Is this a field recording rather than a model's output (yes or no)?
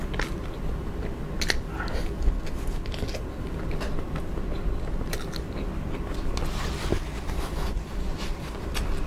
yes